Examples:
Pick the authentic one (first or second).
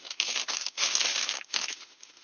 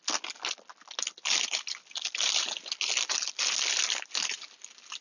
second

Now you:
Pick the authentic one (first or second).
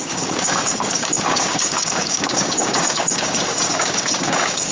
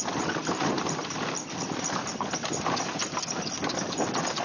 second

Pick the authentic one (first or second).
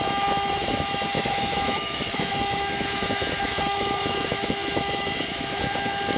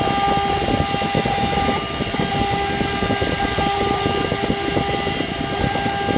second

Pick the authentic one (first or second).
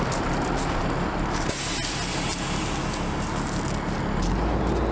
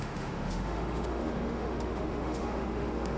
first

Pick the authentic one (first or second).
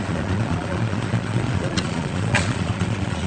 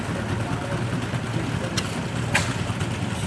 second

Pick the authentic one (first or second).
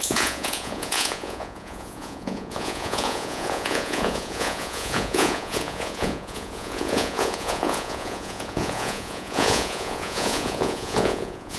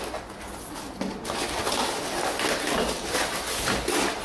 second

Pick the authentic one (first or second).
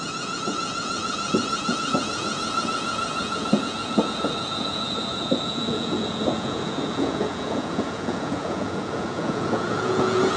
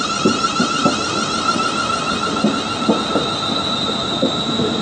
second